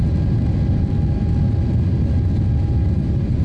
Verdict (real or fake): real